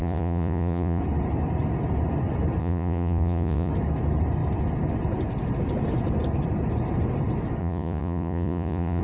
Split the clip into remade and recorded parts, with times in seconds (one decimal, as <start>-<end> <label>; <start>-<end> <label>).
0.0-1.0 remade; 1.0-2.6 recorded; 2.6-3.7 remade; 3.7-7.6 recorded; 7.6-9.0 remade

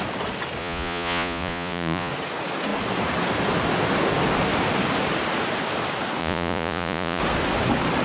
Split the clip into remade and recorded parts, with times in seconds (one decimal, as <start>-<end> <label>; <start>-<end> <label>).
0.0-0.6 recorded; 0.6-2.1 remade; 2.1-6.2 recorded; 6.2-7.2 remade; 7.2-8.0 recorded

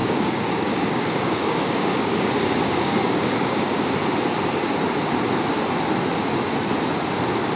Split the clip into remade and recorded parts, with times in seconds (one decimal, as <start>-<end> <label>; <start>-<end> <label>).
0.0-3.9 remade; 3.9-7.6 recorded

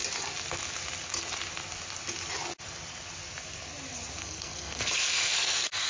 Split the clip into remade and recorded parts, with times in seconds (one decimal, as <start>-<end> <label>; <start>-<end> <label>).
0.0-4.2 recorded; 4.2-5.9 remade